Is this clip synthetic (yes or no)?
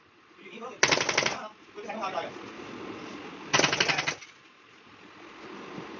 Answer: no